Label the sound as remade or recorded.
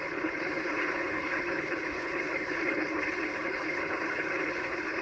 remade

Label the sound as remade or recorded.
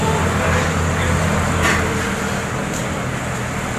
recorded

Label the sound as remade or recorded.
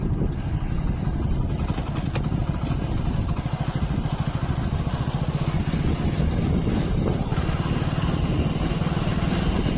recorded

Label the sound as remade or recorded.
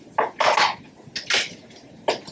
recorded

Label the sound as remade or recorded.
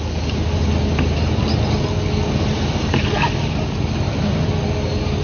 recorded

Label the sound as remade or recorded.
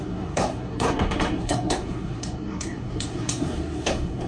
remade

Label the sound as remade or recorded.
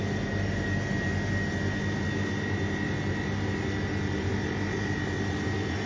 recorded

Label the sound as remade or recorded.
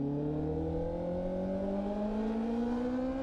recorded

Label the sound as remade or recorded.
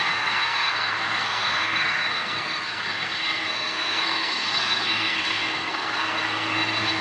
remade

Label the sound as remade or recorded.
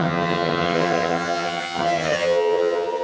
remade